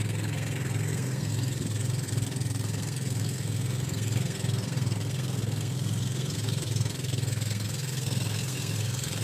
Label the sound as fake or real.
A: fake